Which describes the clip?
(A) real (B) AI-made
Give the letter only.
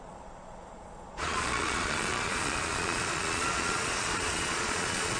B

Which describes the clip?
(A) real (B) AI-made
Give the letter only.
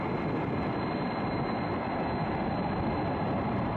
A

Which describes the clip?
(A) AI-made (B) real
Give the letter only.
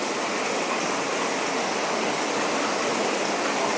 B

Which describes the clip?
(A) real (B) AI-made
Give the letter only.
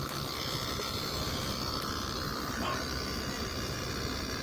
A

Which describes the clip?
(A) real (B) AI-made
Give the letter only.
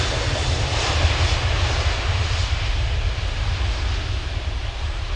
A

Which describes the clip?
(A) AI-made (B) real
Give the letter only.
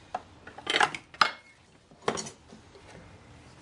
B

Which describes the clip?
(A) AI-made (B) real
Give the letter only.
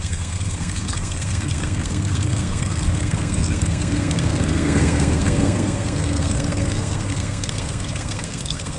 A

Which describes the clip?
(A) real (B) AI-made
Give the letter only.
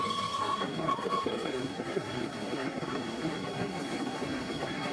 B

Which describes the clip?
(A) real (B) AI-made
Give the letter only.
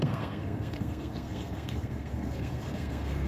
B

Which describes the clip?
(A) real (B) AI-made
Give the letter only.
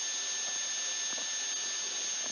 A